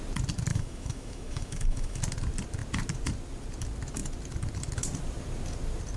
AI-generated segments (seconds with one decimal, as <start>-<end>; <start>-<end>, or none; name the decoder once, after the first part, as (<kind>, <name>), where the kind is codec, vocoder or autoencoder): 0.5-2.0 (autoencoder, DAC-VAE)